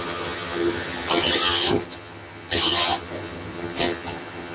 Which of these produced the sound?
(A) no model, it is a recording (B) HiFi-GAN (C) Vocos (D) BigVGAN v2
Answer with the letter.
B